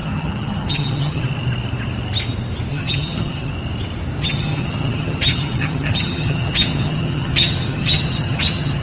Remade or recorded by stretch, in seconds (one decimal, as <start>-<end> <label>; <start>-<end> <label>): 0.0-1.2 remade; 1.2-2.7 recorded; 2.7-3.5 remade; 3.5-4.2 recorded; 4.2-8.8 remade